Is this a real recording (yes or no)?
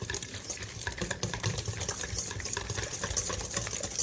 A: no